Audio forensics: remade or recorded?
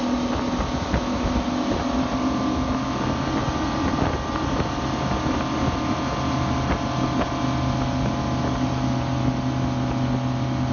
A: recorded